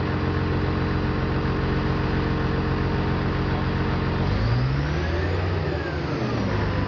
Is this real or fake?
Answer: real